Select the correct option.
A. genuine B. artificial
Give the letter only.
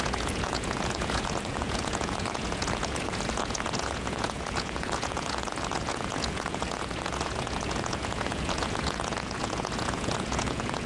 B